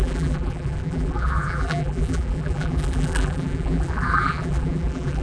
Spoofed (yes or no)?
yes